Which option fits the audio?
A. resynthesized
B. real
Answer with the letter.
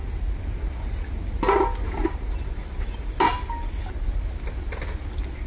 B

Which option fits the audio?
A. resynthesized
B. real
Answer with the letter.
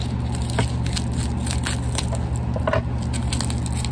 B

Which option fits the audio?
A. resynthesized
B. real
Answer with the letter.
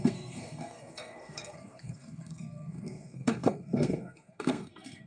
A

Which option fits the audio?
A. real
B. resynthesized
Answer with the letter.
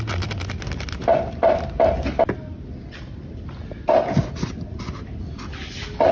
A